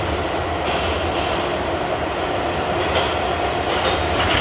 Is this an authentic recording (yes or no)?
yes